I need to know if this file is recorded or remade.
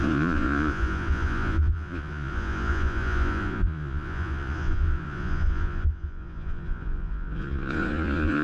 remade